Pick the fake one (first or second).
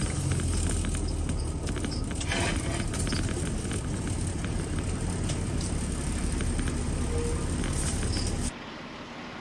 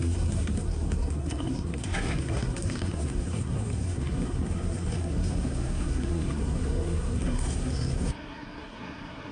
second